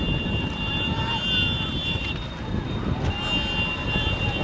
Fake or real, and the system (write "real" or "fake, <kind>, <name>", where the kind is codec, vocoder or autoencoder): real